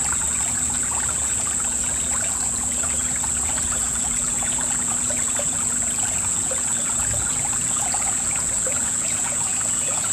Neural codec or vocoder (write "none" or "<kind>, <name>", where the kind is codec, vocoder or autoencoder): vocoder, Vocos